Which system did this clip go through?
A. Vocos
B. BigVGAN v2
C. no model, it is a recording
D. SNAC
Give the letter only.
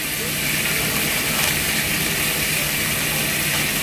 C